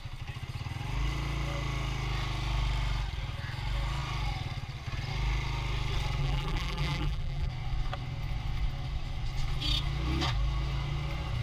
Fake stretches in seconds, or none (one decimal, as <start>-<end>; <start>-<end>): 6.2-7.5